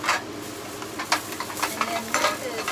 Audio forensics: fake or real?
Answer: real